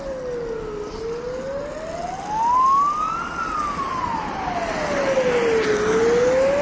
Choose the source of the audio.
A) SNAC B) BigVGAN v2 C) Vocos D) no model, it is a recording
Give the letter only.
D